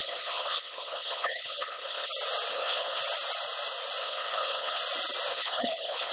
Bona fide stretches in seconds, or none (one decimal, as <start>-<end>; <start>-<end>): 2.1-2.5; 3.0-4.0; 4.8-5.3